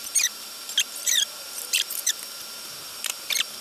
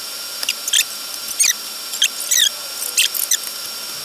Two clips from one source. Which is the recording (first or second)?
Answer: second